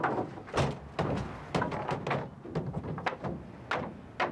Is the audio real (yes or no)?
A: yes